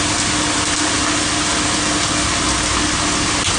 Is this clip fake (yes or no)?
no